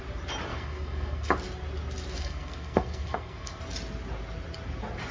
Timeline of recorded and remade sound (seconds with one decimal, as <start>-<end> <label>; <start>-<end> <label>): 0.0-0.5 recorded; 0.5-1.3 remade; 1.3-2.2 recorded; 2.2-3.6 remade; 3.6-5.1 recorded